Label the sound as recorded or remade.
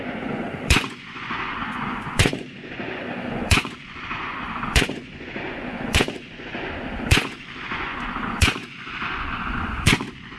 remade